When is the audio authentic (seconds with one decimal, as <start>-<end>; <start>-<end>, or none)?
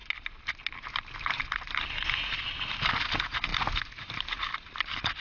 0.0-5.2